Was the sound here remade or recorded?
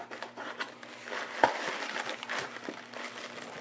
recorded